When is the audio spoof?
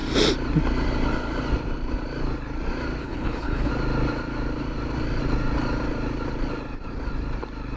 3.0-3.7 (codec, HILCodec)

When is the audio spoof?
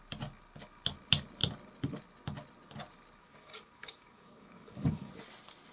3.2-5.1 (codec, DAC)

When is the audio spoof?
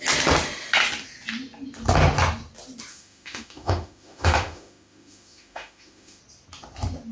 2.9-6.2 (autoencoder, DAC-VAE)